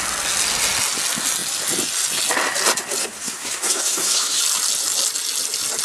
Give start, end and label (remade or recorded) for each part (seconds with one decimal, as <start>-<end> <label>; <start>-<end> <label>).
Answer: 0.0-3.0 recorded; 3.0-4.4 remade; 4.4-5.8 recorded